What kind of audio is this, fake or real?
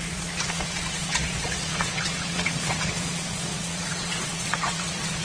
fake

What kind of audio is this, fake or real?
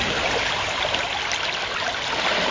real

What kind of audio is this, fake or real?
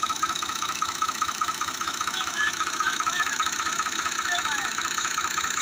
fake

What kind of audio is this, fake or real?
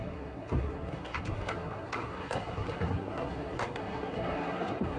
fake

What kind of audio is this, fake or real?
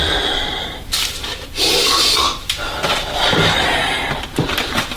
fake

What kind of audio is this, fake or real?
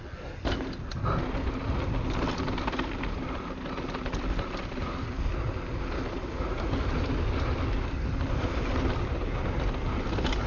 real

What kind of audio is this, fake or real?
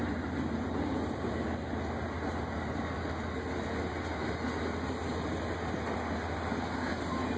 real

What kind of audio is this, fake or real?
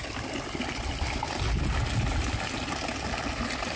real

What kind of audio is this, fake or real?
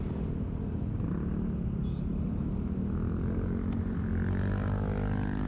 real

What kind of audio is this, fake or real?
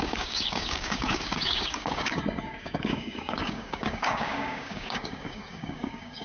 fake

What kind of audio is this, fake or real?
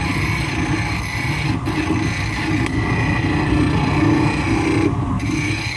real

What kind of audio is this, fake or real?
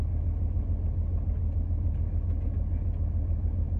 real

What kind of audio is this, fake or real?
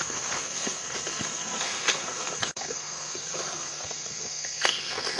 fake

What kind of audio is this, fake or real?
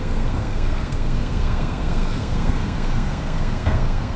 fake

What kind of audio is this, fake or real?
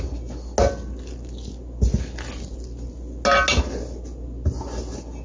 real